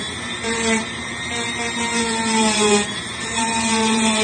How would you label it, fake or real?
fake